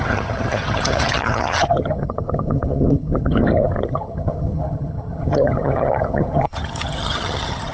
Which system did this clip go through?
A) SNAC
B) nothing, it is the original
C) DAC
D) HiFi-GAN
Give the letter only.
D